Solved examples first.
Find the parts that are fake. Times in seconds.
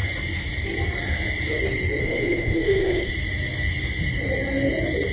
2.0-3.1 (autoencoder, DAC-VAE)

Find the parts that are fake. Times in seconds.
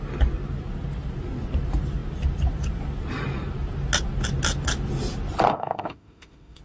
5.5-6.6 (autoencoder, DAC-VAE)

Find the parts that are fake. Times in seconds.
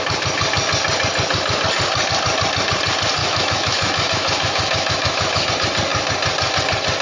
3.2-5.5 (autoencoder, DAC-VAE)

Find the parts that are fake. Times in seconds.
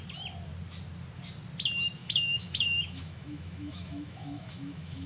2.0-5.1 (autoencoder, DAC-VAE)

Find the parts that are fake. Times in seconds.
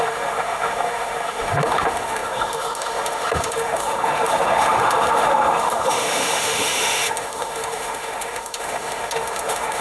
0.0-9.8 (autoencoder, DAC-VAE)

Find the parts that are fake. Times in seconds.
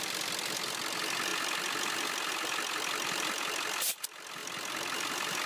none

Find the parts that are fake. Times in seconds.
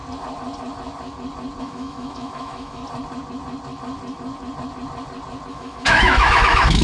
1.6-2.8 (autoencoder, DAC-VAE); 5.5-6.8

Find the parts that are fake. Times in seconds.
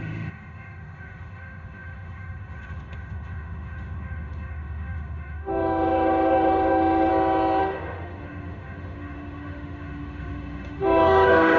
0.0-7.1 (autoencoder, DAC-VAE); 7.6-11.6